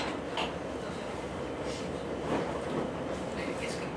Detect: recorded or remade recorded